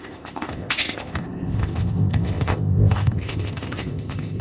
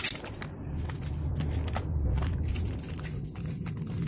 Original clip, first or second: second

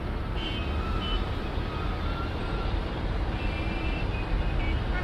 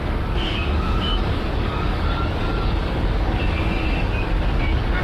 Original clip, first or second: first